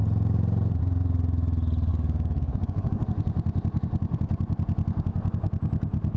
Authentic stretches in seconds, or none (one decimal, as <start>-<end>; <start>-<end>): 0.0-1.9; 3.0-6.2